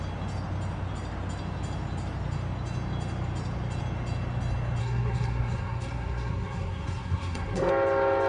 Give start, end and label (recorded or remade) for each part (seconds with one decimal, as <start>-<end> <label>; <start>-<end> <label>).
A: 0.0-4.8 recorded; 4.8-7.7 remade; 7.7-8.3 recorded